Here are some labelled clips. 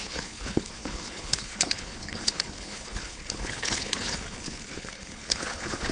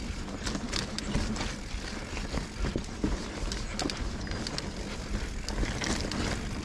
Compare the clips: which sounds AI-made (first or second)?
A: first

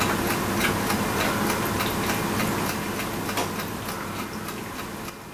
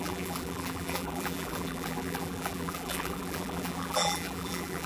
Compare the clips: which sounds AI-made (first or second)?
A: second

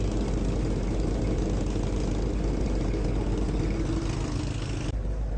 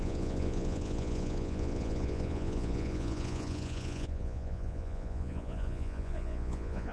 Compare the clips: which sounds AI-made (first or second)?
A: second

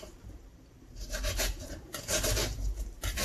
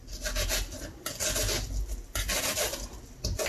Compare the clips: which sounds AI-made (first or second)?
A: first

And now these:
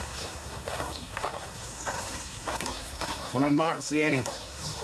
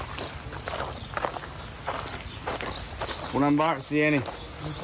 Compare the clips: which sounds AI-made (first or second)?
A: first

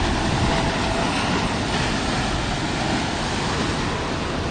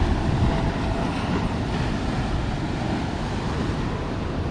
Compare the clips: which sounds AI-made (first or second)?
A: second